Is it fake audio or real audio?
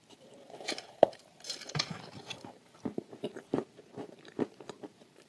fake